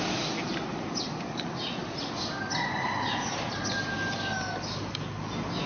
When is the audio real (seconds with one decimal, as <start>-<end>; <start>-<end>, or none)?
0.0-5.7